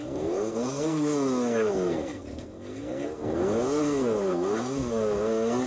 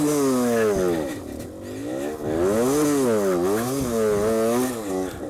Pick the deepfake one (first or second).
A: first